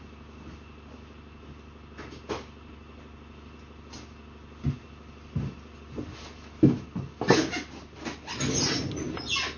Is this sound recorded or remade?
recorded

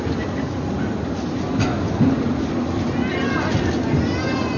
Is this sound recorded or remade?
recorded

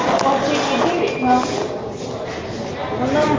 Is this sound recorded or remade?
recorded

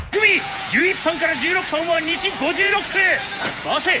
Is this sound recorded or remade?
remade